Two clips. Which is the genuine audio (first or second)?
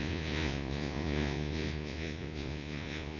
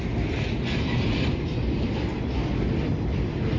second